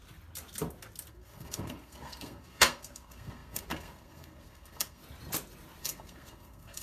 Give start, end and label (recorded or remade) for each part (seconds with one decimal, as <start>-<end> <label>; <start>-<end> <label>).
0.0-1.1 recorded; 1.1-5.0 remade; 5.0-5.8 recorded; 5.8-6.8 remade